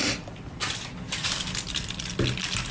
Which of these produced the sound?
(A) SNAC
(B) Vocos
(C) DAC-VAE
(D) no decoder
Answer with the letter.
D